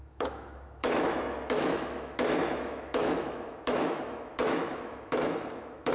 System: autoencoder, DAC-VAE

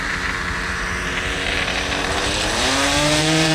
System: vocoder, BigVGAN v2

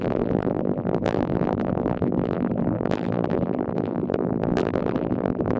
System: vocoder, BigVGAN v2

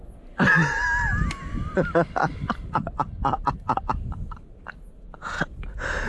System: none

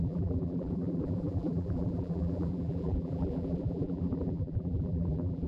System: vocoder, BigVGAN v2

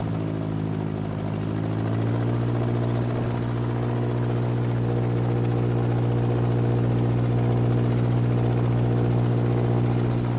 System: none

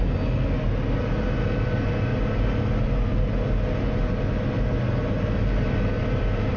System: none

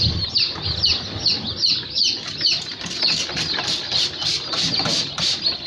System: none